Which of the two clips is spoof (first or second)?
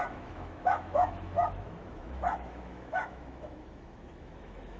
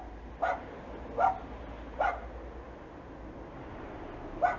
first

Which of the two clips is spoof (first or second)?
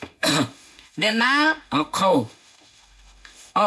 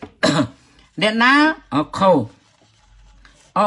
first